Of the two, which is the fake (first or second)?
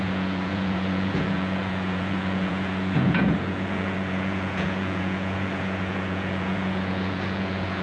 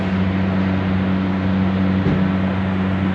first